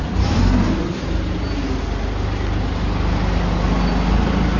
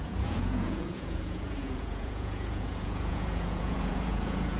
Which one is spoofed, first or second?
second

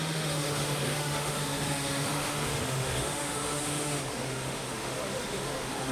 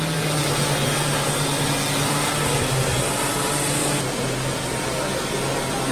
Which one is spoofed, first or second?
first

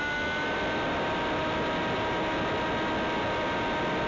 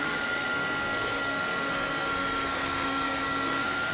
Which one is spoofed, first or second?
second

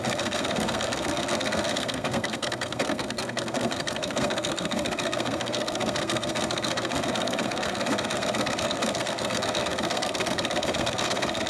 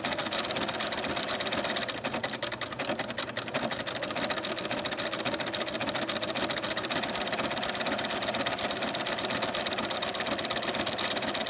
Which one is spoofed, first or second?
first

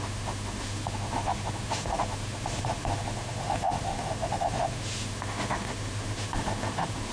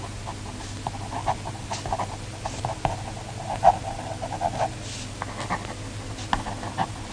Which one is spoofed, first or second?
first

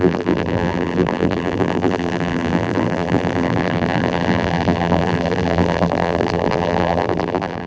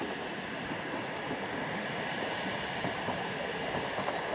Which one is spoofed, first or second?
first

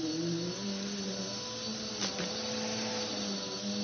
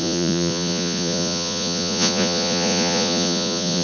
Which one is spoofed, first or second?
second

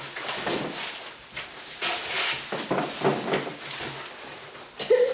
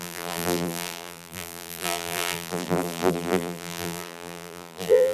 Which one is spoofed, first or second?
second